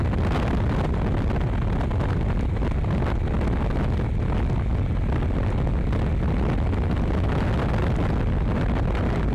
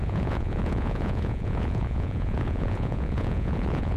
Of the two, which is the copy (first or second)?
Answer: second